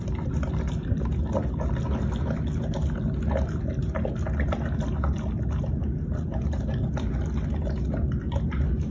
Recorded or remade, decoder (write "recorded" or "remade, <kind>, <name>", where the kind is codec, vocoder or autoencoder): recorded